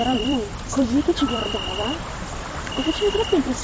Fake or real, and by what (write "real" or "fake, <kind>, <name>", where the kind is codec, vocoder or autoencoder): fake, vocoder, BigVGAN v2